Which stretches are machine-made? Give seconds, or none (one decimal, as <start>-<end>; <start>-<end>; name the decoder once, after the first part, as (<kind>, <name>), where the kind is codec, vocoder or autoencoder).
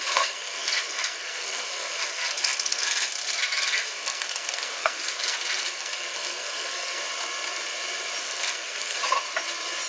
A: 0.0-7.0 (codec, SNAC); 8.2-9.0